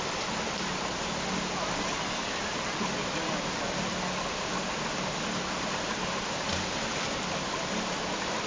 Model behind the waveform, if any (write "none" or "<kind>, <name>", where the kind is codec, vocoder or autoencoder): none